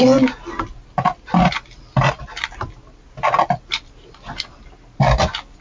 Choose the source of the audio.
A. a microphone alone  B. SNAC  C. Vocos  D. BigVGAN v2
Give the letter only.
A